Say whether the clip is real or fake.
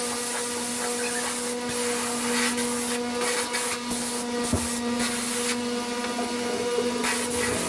real